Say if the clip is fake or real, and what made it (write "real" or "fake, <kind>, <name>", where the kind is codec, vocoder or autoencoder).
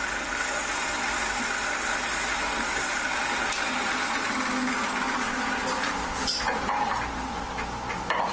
real